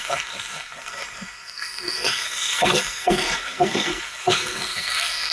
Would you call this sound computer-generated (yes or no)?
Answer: yes